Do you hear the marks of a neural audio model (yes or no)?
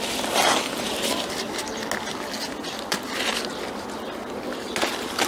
no